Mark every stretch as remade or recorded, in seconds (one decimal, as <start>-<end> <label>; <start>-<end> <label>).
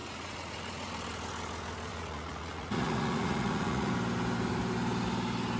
0.0-0.9 remade; 0.9-1.9 recorded; 1.9-3.9 remade; 3.9-5.6 recorded